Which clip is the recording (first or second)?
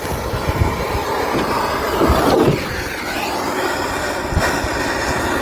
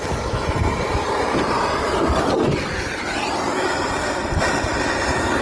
first